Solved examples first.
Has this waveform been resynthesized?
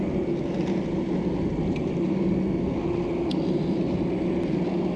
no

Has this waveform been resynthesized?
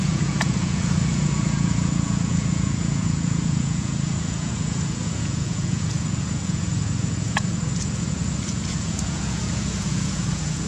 yes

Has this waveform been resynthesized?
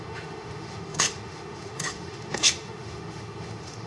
yes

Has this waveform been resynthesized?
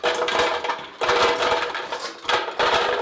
no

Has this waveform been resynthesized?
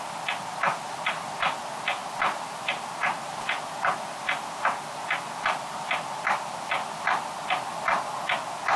no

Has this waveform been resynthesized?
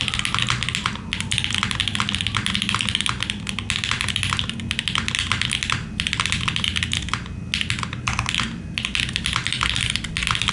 no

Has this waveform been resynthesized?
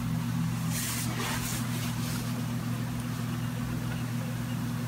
no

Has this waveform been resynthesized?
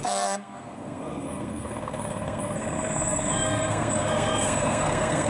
yes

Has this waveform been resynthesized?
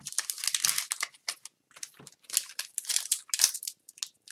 no